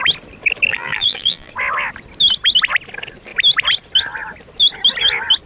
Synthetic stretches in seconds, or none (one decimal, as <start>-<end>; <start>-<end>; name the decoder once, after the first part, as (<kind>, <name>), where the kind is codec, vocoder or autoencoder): 0.7-1.5 (vocoder, BigVGAN v2)